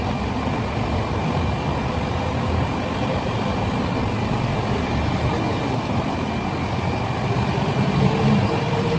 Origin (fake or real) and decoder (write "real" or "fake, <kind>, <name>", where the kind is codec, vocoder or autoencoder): real